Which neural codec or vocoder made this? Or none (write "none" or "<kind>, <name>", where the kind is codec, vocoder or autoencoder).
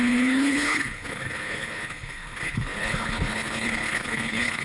codec, HILCodec